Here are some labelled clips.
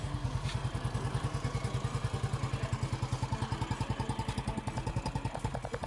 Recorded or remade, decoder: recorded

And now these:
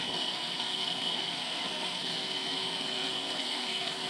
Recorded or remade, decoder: remade, codec, SNAC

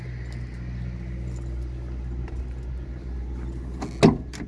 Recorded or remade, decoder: recorded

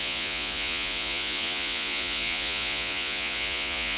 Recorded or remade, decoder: remade, vocoder, Vocos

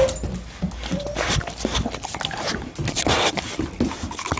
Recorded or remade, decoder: recorded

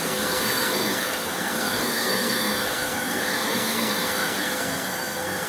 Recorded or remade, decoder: remade, codec, SNAC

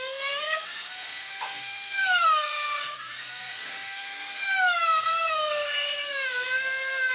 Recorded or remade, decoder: remade, codec, SNAC